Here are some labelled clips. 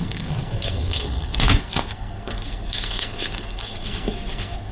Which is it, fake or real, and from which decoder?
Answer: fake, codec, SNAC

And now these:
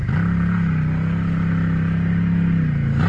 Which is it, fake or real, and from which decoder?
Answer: real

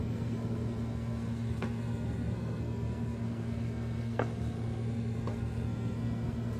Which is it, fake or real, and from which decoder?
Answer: fake, codec, SNAC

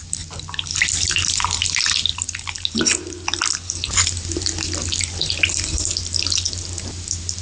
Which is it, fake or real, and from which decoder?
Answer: real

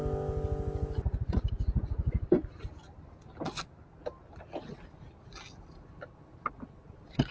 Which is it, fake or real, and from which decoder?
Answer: real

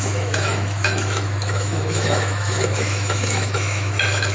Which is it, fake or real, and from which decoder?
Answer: fake, autoencoder, DAC-VAE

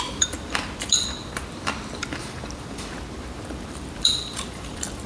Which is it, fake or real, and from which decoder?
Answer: fake, vocoder, BigVGAN v2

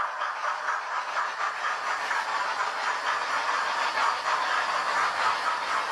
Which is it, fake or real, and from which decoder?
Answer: real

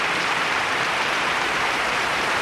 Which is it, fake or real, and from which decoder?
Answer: fake, vocoder, BigVGAN v2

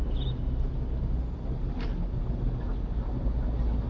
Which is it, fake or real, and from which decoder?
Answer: real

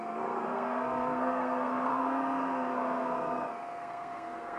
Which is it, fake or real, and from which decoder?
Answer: fake, codec, SNAC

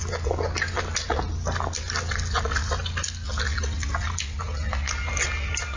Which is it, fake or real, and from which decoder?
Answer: real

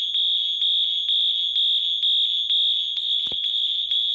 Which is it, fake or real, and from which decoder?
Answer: real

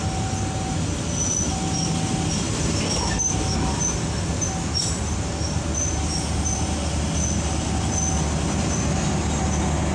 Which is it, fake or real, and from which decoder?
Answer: real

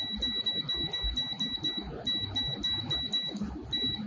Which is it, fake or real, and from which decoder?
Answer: real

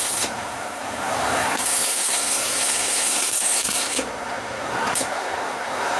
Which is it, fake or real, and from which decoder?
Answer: fake, codec, SNAC